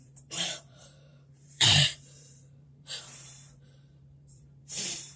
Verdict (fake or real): fake